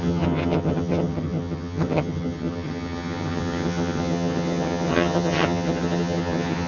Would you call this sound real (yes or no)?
no